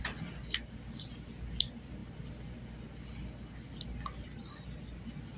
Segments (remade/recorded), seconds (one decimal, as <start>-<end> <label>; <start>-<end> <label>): 0.0-5.4 recorded